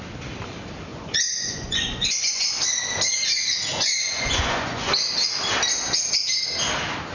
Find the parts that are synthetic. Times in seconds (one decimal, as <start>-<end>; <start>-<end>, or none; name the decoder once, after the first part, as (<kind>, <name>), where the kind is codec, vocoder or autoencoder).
0.9-2.6 (vocoder, Vocos); 3.7-4.9